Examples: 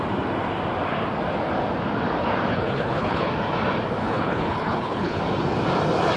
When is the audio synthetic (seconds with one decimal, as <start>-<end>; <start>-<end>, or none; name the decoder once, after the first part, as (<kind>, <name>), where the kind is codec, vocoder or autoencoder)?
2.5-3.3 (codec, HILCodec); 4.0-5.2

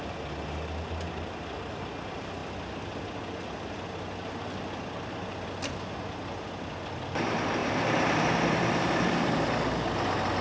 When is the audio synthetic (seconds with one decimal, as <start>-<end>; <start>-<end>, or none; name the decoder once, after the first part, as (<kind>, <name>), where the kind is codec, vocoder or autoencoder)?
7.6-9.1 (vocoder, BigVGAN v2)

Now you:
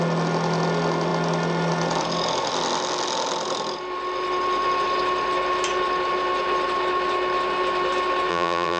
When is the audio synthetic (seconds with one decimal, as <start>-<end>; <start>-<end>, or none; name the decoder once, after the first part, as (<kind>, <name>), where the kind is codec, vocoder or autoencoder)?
8.3-8.8 (vocoder, BigVGAN v2)

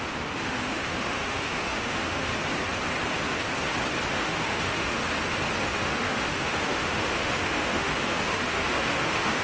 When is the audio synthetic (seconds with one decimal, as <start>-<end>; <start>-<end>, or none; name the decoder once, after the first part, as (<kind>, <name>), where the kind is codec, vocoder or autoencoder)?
0.0-2.3 (autoencoder, DAC-VAE); 4.1-5.0; 5.6-9.4

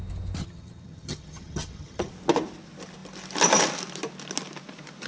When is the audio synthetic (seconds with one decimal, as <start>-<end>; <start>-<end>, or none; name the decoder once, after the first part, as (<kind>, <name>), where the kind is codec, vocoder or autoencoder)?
0.4-2.1 (vocoder, HiFi-GAN)

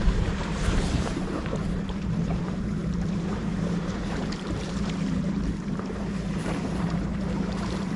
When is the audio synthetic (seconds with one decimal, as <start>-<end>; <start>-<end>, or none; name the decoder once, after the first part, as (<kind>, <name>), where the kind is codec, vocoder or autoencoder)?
0.0-8.0 (vocoder, BigVGAN v2)

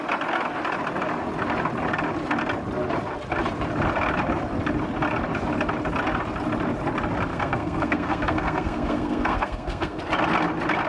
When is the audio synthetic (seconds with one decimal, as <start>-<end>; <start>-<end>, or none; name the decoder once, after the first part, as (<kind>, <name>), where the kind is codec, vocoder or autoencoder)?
7.3-10.0 (codec, SNAC)

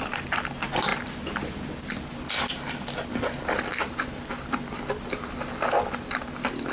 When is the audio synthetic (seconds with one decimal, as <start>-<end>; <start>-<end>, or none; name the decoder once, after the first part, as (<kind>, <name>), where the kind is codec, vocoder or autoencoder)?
0.9-1.9 (vocoder, BigVGAN v2)